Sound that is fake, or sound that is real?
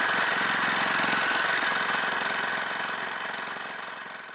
real